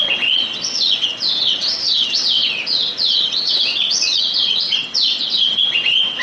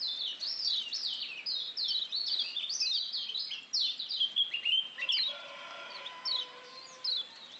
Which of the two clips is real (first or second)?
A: second